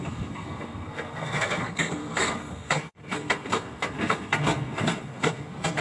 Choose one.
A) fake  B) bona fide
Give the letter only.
A